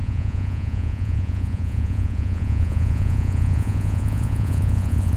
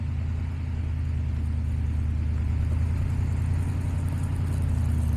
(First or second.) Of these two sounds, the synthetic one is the first